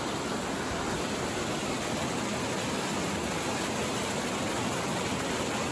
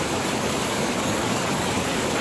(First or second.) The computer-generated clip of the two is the second